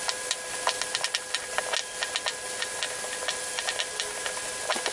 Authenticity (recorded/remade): recorded